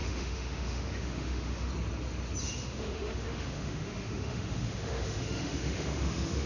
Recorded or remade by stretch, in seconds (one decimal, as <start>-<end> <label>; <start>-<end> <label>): 0.0-1.7 remade; 1.7-2.4 recorded; 2.4-6.5 remade